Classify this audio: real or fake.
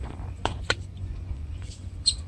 fake